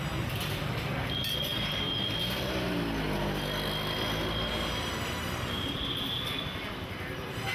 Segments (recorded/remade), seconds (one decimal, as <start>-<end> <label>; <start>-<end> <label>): 0.0-7.5 recorded